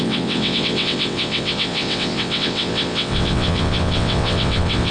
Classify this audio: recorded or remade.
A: remade